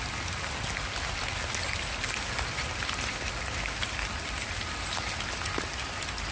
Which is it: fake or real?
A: real